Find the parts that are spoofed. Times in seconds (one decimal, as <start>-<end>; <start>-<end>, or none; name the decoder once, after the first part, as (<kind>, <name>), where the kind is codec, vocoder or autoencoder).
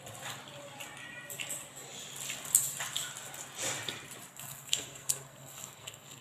4.3-6.2 (codec, SNAC)